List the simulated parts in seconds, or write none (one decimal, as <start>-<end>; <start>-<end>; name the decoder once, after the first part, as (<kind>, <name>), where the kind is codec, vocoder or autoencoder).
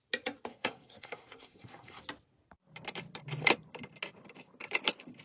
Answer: 0.5-2.0 (codec, SNAC)